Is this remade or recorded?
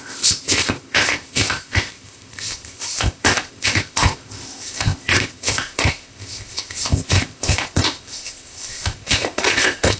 remade